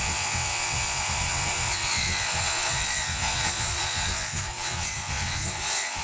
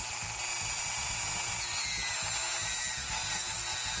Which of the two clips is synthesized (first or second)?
first